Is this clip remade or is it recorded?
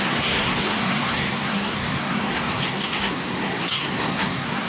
remade